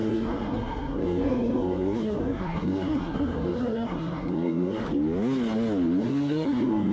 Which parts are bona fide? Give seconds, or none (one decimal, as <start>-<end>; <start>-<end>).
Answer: 4.8-6.0